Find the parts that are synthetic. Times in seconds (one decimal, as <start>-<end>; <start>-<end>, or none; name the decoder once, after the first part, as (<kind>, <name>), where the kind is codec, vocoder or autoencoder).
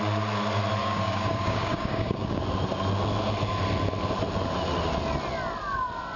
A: 0.8-2.4 (codec, DAC)